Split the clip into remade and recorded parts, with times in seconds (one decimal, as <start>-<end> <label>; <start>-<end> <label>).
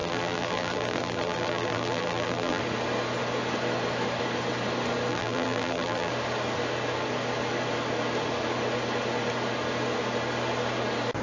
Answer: 0.0-2.6 remade; 2.6-5.1 recorded; 5.1-6.1 remade; 6.1-11.2 recorded